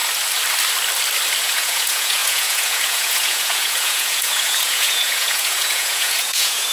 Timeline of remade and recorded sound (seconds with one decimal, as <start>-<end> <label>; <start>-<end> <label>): 0.0-1.4 recorded; 1.4-6.7 remade